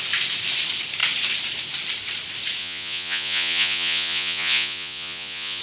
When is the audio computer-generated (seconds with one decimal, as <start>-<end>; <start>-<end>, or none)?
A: 2.6-5.6